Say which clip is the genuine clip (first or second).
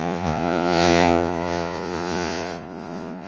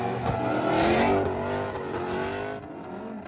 second